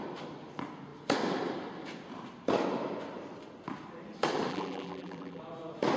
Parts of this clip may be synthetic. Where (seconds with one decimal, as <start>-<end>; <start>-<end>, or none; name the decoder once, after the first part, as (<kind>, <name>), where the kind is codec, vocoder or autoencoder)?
4.5-5.4 (vocoder, BigVGAN v2)